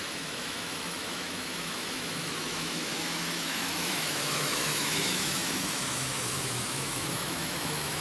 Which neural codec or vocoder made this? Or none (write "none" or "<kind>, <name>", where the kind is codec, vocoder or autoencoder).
autoencoder, DAC-VAE